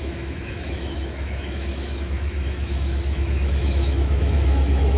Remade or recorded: remade